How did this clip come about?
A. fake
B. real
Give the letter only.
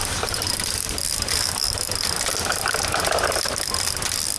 B